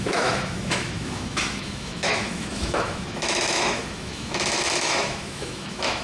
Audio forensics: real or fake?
fake